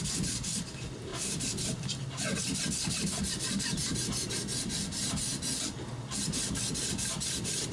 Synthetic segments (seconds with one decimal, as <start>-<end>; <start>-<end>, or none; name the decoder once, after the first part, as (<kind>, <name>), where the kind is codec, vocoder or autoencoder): 0.0-5.3 (vocoder, BigVGAN v2); 7.3-7.7